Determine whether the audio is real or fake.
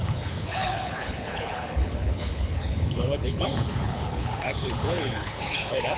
fake